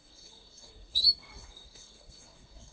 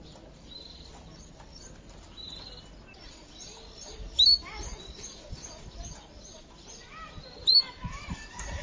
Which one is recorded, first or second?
second